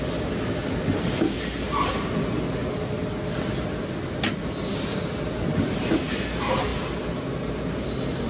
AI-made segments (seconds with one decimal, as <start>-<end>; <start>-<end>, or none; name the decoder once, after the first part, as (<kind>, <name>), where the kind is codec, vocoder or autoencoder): none